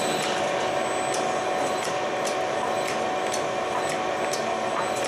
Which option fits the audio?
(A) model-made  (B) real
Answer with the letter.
B